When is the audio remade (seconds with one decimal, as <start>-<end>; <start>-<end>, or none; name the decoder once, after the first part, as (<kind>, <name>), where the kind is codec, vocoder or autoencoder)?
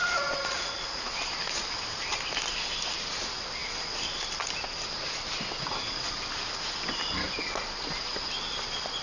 0.0-1.2 (vocoder, Vocos)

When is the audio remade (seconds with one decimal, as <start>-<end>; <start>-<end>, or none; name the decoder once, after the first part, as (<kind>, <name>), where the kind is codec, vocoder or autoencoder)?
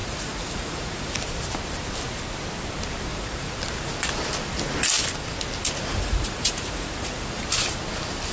0.0-1.1 (vocoder, Vocos); 3.1-3.6; 5.9-7.4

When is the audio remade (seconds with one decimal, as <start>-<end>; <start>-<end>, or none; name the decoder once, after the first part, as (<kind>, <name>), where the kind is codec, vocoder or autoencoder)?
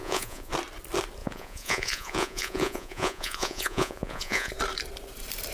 0.0-0.5 (vocoder, Vocos); 1.2-4.5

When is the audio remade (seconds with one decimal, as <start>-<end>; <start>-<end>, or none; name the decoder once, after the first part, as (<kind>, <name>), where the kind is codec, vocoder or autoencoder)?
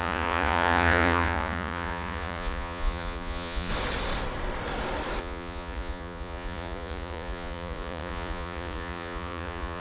0.0-3.7 (vocoder, Vocos); 5.2-9.8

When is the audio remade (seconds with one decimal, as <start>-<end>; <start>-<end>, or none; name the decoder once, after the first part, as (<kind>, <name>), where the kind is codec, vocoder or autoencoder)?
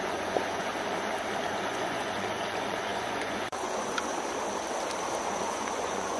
0.0-0.7 (vocoder, Vocos); 1.5-4.1; 5.2-6.2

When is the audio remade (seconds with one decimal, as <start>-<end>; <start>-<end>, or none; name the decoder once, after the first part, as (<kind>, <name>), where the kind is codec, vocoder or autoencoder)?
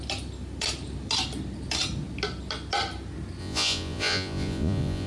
3.4-5.1 (vocoder, Vocos)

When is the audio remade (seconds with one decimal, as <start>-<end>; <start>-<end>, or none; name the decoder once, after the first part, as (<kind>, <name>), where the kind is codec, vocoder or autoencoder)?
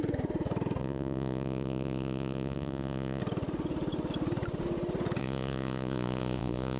0.8-3.2 (vocoder, Vocos); 5.2-6.8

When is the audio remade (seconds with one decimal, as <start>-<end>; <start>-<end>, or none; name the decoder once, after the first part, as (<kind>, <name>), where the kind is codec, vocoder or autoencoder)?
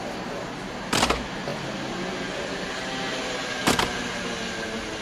none